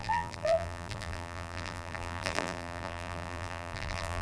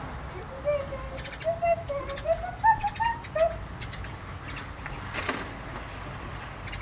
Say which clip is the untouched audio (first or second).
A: second